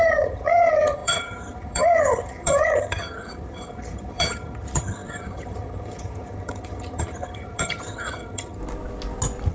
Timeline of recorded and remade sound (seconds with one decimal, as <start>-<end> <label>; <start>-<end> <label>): 0.0-8.6 remade; 8.6-9.5 recorded